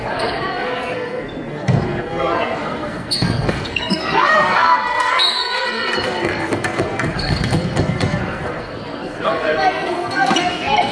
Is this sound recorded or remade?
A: remade